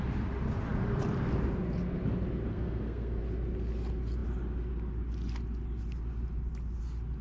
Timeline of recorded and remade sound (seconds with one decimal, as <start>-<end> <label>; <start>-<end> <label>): 0.0-2.5 recorded; 2.5-3.2 remade; 3.2-7.2 recorded